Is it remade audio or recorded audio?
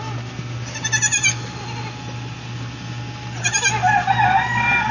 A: recorded